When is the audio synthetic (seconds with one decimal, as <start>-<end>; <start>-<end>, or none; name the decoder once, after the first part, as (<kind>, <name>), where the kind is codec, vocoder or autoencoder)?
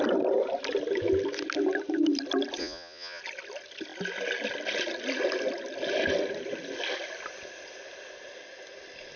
2.6-3.2 (vocoder, Vocos)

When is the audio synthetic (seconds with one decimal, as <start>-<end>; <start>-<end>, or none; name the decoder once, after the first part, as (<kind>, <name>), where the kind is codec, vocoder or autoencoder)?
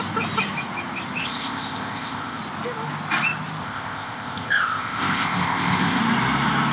1.2-2.4 (codec, ZipCodec); 3.6-6.0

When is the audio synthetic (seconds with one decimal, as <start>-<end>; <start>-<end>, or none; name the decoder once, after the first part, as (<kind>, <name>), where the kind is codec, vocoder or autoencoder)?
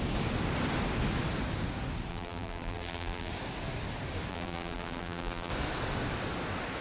2.1-3.3 (vocoder, BigVGAN v2); 4.3-5.5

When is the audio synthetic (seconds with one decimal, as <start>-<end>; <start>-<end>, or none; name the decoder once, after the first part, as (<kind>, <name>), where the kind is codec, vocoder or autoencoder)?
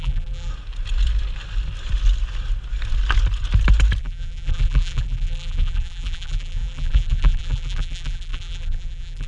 0.0-0.5 (vocoder, BigVGAN v2); 4.0-9.3